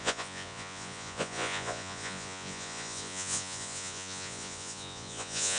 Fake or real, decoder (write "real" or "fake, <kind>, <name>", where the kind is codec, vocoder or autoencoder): fake, vocoder, Vocos